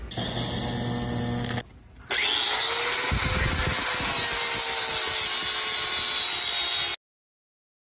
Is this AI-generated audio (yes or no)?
no